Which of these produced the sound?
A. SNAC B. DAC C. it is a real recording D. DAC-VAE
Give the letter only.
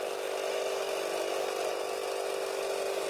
C